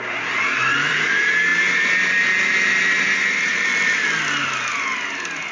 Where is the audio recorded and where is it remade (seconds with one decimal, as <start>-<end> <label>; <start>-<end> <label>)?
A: 0.0-3.7 remade; 3.7-5.5 recorded